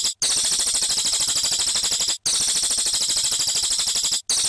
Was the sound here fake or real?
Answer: real